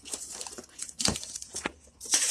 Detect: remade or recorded remade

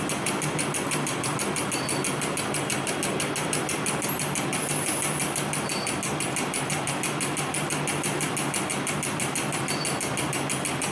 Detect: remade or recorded recorded